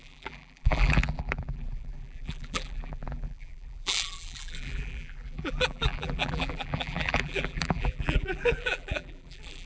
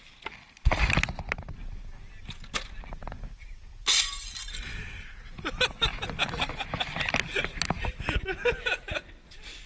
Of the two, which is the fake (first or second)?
first